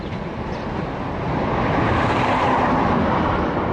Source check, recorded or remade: recorded